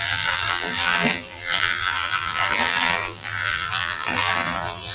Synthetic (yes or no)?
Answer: yes